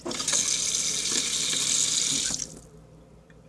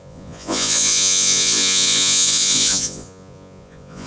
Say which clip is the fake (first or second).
second